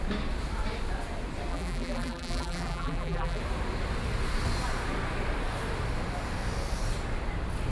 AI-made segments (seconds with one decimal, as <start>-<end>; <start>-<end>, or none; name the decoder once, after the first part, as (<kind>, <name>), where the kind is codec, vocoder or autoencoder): 1.5-3.4 (vocoder, BigVGAN v2)

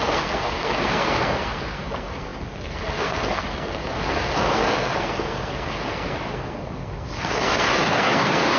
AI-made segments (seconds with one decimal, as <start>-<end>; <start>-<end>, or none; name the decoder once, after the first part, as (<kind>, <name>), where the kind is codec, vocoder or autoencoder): 0.0-8.6 (codec, SNAC)

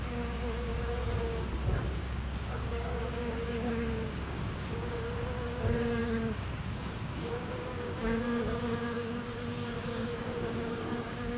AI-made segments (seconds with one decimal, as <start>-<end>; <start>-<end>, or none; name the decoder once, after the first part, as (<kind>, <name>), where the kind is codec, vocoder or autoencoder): 0.0-0.7 (codec, DAC); 2.0-11.4

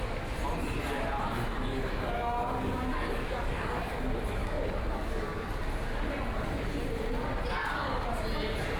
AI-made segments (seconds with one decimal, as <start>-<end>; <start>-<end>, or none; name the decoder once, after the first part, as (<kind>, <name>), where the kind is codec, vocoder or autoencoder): 1.7-4.0 (codec, DAC); 4.4-5.5; 7.6-8.1

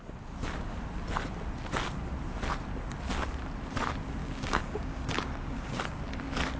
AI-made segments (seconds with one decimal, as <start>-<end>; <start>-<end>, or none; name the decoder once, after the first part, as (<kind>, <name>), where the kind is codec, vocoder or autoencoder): 4.2-5.8 (codec, DAC)

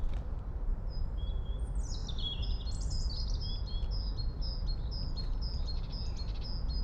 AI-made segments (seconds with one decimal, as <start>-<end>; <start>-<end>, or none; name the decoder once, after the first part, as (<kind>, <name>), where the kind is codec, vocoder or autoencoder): 0.7-1.6 (vocoder, BigVGAN v2); 2.0-2.5

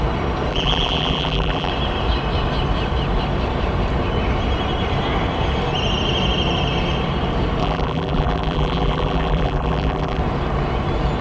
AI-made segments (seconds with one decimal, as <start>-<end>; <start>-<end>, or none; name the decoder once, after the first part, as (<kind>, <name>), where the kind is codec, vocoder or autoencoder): 0.5-1.7 (vocoder, BigVGAN v2); 7.6-10.2